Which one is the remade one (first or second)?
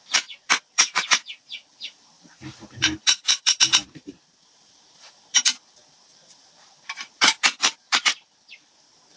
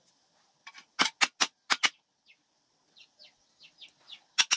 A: first